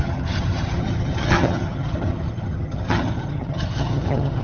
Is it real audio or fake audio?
fake